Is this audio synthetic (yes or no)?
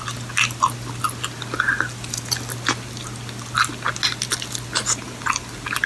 no